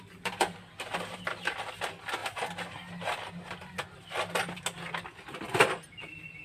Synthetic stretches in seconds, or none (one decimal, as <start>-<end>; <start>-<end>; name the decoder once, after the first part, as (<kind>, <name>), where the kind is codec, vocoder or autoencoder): none